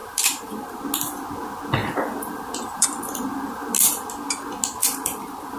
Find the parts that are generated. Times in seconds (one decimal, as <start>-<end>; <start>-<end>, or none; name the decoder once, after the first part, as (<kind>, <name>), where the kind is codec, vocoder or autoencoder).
0.0-0.8 (vocoder, BigVGAN v2); 1.8-3.0; 4.8-5.6